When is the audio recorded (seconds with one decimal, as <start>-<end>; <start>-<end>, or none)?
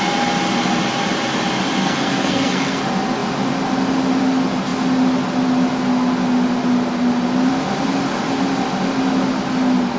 0.0-1.8; 2.8-10.0